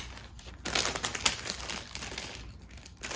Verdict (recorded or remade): recorded